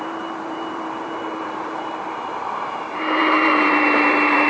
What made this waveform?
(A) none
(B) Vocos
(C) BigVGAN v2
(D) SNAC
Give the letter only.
C